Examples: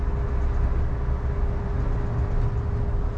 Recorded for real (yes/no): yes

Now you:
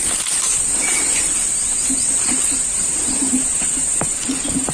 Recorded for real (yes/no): no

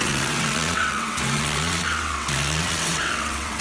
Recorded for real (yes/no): no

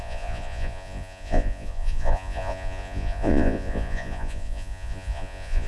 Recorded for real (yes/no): no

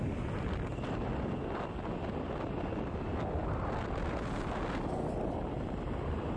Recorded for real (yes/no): yes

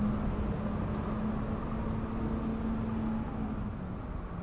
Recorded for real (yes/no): yes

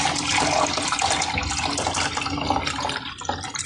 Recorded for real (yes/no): yes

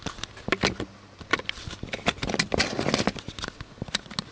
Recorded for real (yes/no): yes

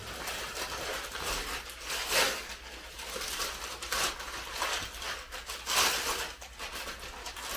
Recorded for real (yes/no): yes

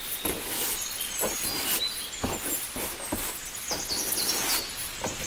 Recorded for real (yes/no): yes